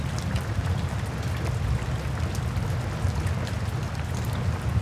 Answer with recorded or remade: recorded